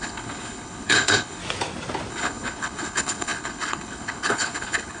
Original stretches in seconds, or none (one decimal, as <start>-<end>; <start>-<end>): 1.4-2.1